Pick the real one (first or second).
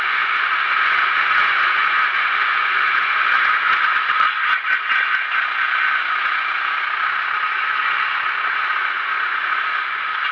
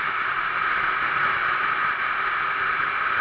second